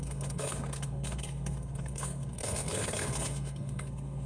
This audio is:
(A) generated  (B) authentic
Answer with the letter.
A